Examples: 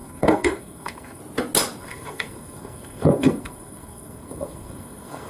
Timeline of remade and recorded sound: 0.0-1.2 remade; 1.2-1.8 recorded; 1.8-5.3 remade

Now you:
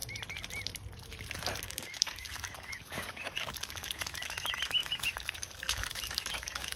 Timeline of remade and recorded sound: 0.0-1.6 recorded; 1.6-6.8 remade

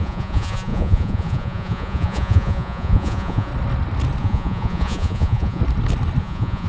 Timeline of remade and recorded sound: 0.0-3.5 remade; 3.5-4.2 recorded; 4.2-5.6 remade; 5.6-6.2 recorded; 6.2-6.7 remade